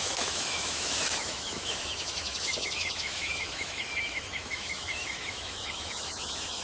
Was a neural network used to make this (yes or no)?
yes